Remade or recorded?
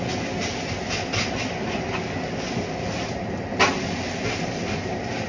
recorded